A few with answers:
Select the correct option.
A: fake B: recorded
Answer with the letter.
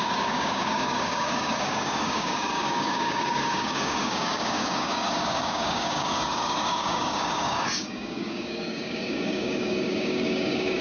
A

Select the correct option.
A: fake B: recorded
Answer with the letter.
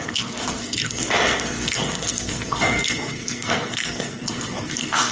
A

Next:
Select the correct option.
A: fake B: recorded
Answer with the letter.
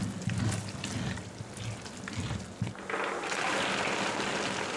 B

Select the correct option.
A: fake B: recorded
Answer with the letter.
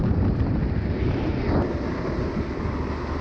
B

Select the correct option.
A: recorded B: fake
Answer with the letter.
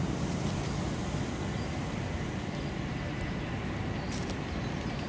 A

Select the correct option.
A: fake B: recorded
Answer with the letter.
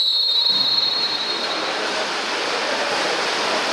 A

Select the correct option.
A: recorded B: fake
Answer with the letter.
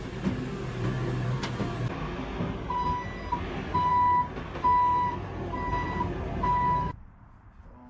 A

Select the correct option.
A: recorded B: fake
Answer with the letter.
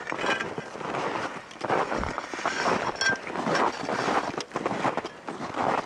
A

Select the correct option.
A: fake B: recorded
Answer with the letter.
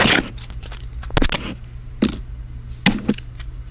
B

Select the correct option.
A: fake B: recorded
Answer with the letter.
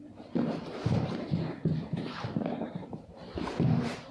A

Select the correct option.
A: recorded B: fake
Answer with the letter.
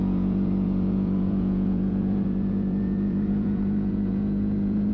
B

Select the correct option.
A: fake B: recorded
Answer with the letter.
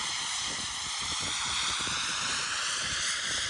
A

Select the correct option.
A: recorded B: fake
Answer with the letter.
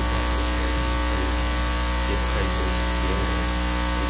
A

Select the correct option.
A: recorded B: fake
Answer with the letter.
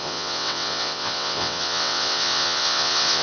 B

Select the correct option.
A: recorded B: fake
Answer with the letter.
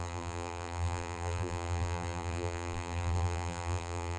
B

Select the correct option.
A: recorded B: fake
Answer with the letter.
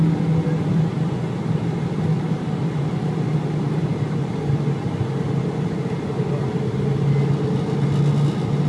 A